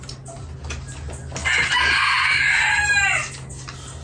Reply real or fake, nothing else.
real